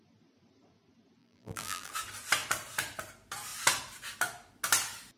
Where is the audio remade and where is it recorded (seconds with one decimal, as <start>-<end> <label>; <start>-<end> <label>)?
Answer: 0.0-1.2 recorded; 1.2-1.9 remade; 1.9-5.2 recorded